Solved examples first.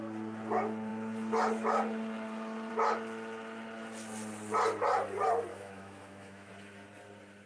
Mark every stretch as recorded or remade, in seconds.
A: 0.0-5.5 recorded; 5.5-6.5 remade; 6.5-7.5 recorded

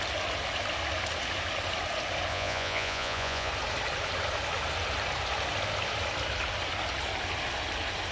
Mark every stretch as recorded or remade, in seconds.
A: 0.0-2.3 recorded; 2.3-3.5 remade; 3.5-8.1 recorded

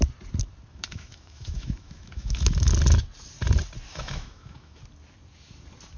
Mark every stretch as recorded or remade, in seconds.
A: 0.0-0.7 recorded; 0.7-2.7 remade; 2.7-3.9 recorded; 3.9-4.8 remade; 4.8-6.0 recorded